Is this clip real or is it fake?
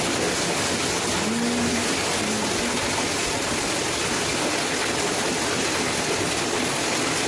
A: real